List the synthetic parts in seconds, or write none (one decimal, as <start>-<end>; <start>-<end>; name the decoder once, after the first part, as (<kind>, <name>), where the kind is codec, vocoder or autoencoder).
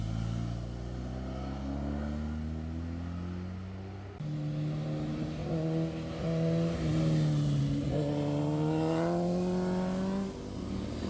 none